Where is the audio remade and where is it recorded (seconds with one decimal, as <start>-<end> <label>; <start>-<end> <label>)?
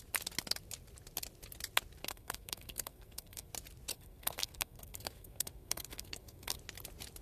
0.0-2.0 recorded; 2.0-3.5 remade; 3.5-3.9 recorded; 3.9-6.6 remade; 6.6-7.2 recorded